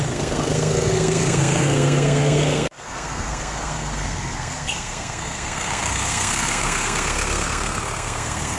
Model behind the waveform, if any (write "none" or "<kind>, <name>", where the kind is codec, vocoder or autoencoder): codec, SNAC